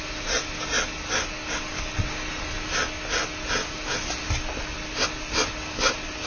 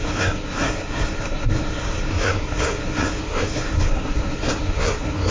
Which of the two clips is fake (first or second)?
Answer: second